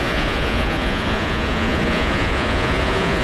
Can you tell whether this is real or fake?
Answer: fake